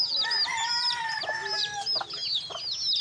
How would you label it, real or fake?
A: real